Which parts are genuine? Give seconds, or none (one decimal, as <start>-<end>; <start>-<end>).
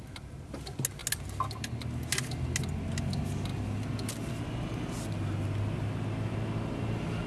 0.0-7.3